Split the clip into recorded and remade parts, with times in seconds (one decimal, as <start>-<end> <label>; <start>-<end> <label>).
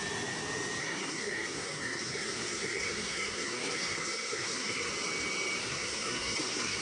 0.0-0.8 recorded; 0.8-4.9 remade; 4.9-5.6 recorded; 5.6-6.8 remade